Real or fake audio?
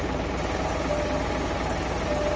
real